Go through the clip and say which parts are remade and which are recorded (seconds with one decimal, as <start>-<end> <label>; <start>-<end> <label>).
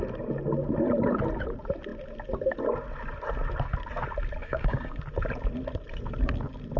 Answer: 0.0-4.4 recorded; 4.4-5.0 remade; 5.0-6.8 recorded